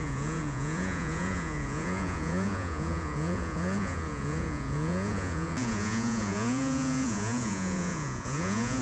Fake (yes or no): yes